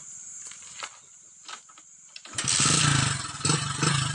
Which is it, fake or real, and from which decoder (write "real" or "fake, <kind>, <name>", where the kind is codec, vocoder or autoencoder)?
real